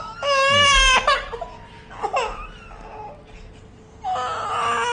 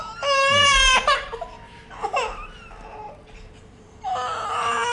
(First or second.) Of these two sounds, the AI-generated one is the second